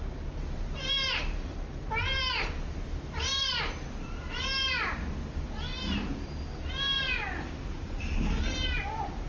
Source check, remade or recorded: recorded